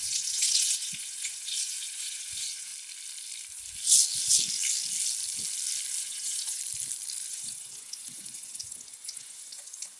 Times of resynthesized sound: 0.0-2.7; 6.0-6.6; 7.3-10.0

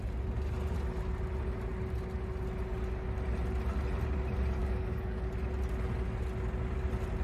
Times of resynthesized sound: 4.6-5.2